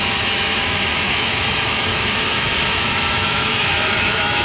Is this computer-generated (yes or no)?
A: yes